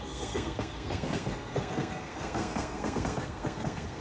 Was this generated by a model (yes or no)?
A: yes